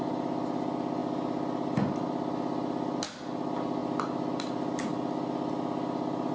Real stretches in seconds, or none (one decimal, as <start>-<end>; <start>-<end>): 0.0-6.3